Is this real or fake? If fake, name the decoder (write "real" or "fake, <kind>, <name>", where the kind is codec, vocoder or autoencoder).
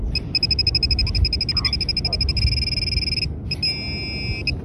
real